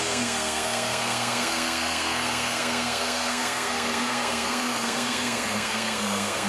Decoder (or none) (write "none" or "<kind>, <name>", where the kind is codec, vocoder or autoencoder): codec, SNAC